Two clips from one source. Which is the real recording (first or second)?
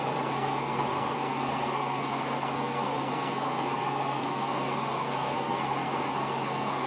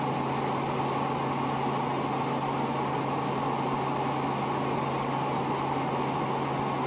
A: second